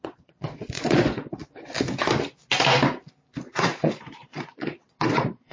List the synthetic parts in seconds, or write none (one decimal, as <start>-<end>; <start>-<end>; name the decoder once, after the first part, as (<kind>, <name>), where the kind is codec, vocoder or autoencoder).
0.0-1.4 (vocoder, Vocos); 3.6-5.5